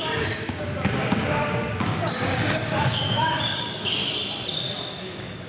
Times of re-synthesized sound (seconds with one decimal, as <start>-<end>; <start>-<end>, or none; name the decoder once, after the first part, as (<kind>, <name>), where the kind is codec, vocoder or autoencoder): 0.0-4.0 (codec, DAC); 5.0-5.5